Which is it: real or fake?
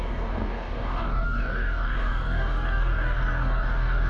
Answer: fake